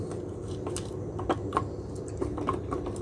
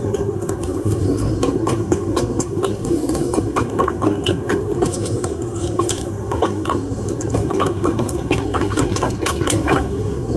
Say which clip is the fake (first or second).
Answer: second